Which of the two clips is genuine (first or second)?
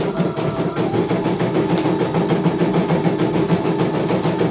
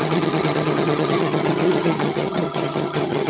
first